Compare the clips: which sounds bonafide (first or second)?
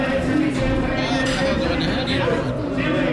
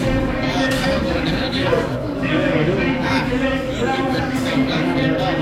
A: first